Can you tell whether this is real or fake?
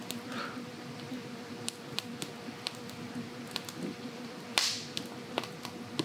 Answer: real